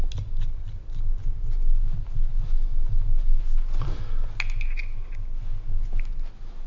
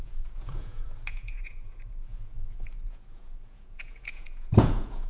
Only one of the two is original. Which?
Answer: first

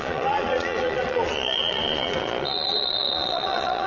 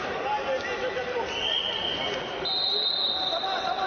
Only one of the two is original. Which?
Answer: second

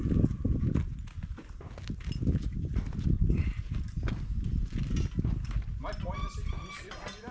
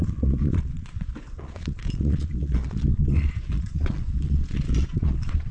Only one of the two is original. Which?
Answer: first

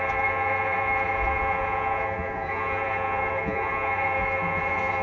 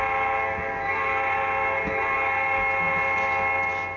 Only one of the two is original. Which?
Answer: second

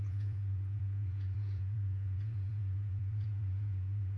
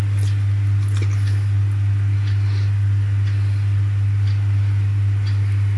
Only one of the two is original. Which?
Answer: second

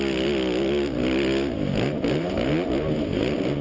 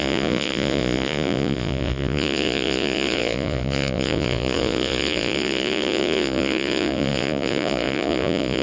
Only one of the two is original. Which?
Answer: first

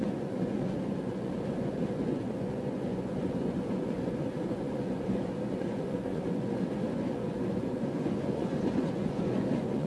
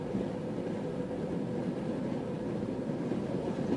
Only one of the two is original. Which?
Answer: second